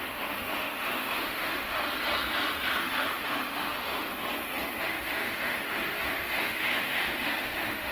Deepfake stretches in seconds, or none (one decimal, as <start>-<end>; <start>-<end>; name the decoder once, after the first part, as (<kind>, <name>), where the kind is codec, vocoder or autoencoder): 0.0-1.8 (autoencoder, DAC-VAE); 2.8-4.1; 4.8-7.9